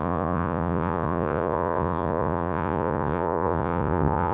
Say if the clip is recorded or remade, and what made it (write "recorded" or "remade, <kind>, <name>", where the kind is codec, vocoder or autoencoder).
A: remade, vocoder, Vocos